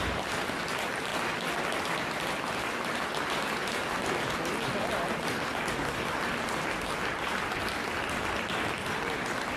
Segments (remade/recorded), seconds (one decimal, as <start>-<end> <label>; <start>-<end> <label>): 0.0-9.6 recorded